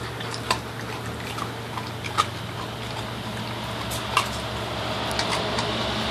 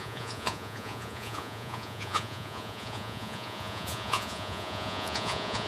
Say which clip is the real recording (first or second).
first